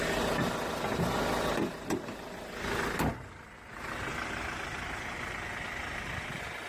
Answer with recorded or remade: recorded